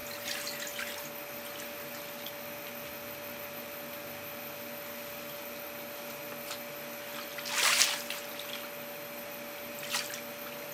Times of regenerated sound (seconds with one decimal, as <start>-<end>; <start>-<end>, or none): none

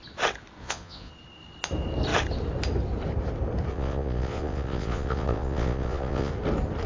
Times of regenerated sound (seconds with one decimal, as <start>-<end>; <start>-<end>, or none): 0.6-1.1; 3.7-6.3